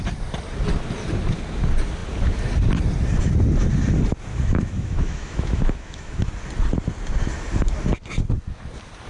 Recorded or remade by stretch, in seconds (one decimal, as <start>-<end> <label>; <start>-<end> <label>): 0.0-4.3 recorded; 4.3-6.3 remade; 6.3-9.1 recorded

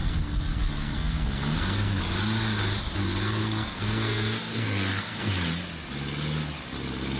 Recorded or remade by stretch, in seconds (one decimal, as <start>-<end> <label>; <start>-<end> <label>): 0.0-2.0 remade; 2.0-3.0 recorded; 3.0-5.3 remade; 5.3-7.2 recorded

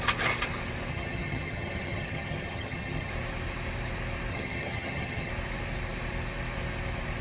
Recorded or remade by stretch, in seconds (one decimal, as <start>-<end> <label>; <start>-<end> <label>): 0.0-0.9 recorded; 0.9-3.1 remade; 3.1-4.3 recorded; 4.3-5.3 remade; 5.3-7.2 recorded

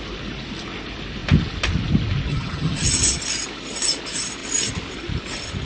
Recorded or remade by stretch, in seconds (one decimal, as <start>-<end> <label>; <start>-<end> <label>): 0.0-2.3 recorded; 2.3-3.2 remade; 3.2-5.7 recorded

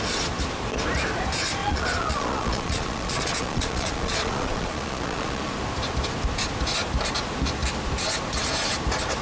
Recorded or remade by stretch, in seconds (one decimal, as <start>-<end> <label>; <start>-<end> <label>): 0.0-1.6 recorded; 1.6-5.5 remade; 5.5-9.2 recorded